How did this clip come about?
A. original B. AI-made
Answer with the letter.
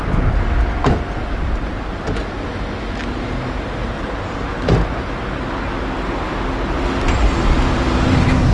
A